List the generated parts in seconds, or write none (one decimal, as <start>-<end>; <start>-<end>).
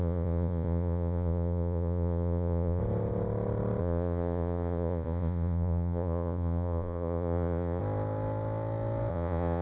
0.0-2.8; 3.8-7.8; 9.1-9.6